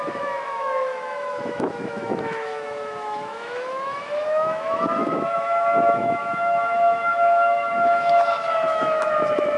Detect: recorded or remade remade